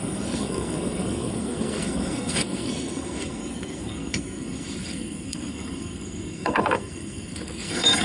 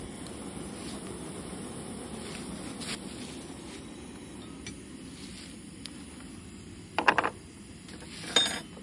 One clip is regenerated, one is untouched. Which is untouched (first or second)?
second